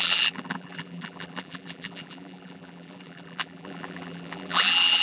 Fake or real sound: fake